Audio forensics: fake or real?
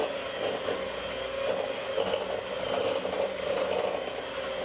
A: real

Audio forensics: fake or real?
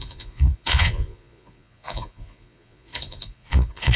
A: fake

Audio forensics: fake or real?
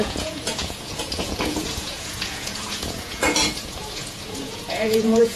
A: fake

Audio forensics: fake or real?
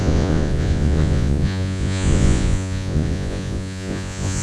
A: fake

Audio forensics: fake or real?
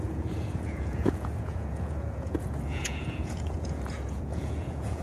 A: fake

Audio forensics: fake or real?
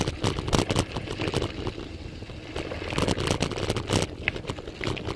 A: real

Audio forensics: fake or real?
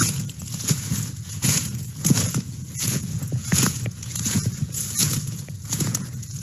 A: fake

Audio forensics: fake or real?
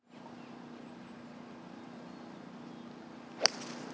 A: real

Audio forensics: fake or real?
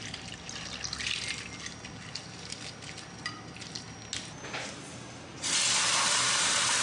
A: real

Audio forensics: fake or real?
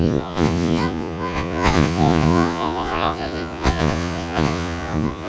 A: fake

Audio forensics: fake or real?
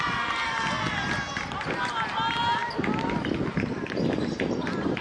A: real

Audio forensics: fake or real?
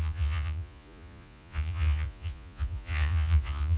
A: fake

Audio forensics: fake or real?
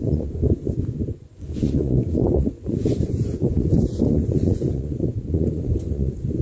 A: fake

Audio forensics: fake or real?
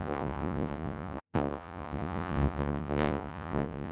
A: fake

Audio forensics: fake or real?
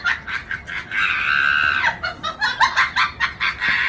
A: real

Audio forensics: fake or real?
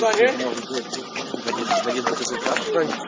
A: real